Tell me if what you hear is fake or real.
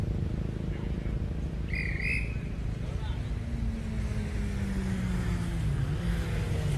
real